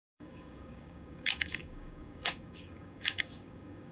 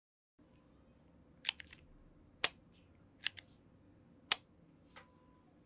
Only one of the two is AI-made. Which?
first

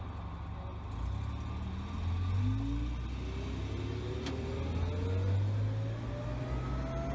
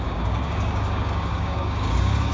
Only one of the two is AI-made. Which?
second